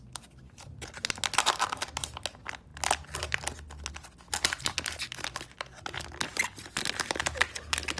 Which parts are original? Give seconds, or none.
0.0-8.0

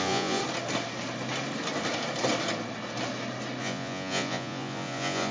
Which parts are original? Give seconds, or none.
0.4-3.6

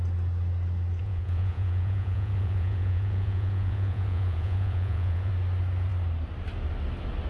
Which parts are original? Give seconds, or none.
0.0-1.0; 5.3-7.3